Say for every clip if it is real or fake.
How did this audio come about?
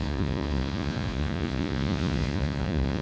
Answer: fake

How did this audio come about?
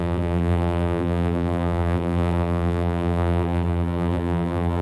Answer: fake